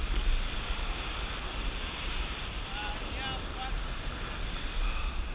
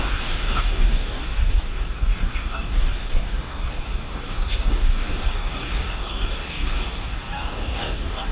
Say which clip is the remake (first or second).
second